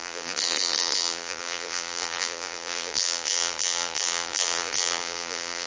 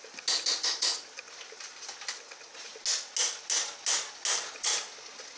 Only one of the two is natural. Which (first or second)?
second